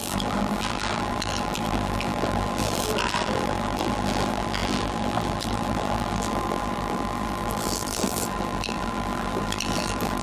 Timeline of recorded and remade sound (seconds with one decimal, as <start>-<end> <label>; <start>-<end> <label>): 0.0-10.2 remade